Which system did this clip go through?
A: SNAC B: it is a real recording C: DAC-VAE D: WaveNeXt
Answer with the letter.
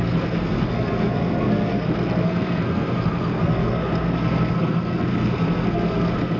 A